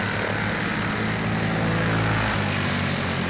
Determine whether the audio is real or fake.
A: real